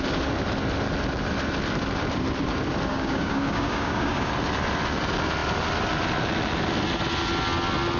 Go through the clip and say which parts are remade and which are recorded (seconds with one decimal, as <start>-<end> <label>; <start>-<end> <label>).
0.0-2.9 recorded; 2.9-4.3 remade; 4.3-8.0 recorded